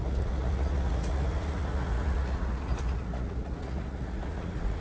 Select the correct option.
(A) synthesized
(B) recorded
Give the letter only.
A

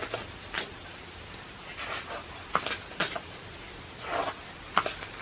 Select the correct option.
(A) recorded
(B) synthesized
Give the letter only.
A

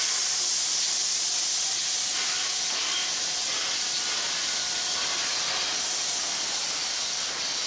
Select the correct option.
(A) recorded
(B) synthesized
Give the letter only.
A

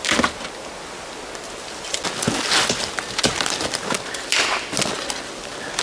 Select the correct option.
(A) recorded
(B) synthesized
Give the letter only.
A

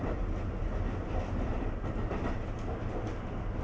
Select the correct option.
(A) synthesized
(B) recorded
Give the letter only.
B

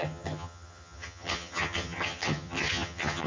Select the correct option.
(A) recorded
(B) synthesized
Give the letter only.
B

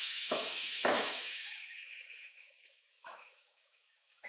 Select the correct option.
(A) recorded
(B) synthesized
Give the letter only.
B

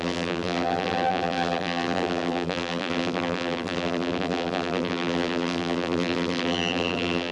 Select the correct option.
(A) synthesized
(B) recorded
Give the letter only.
A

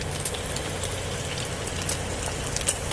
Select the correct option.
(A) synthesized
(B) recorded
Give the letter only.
B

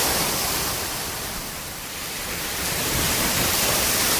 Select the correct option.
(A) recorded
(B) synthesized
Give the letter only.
B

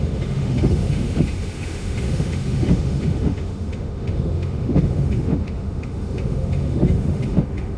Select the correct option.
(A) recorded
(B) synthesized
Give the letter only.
B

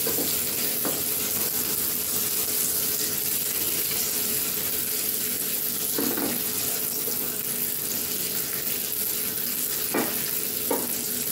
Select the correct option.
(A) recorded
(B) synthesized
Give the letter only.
A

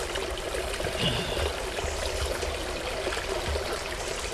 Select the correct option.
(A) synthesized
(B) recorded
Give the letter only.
B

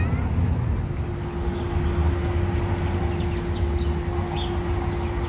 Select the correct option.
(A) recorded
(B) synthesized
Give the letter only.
A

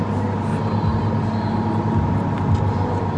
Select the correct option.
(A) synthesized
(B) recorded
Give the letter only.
B